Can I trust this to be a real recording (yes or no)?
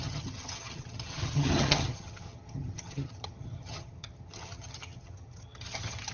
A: no